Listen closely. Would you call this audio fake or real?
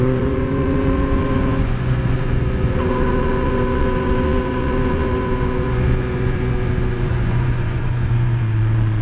fake